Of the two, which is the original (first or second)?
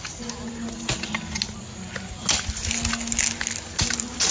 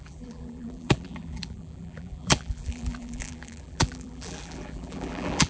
first